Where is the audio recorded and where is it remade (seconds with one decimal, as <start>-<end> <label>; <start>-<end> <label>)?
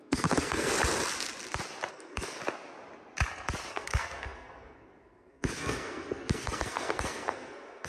0.0-0.7 remade; 0.7-1.9 recorded; 1.9-2.4 remade; 2.4-3.7 recorded; 3.7-7.9 remade